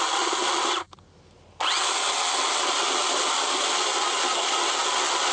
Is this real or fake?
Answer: real